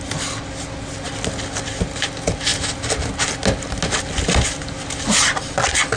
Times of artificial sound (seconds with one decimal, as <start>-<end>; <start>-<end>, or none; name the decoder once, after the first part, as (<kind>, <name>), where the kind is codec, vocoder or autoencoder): none